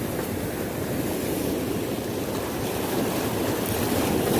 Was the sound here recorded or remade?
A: remade